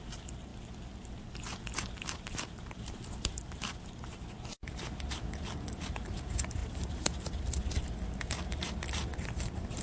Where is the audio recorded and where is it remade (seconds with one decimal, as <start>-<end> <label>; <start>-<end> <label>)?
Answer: 0.0-0.5 remade; 0.5-1.1 recorded; 1.1-9.8 remade